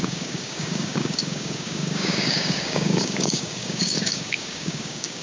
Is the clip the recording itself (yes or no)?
no